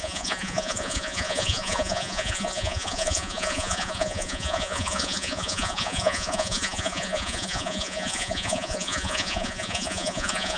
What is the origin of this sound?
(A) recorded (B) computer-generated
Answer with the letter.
B